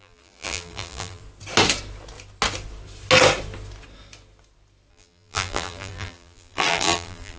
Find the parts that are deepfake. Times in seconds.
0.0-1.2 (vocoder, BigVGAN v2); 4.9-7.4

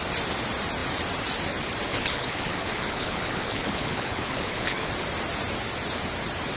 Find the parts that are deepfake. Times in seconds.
1.9-4.9 (codec, HILCodec)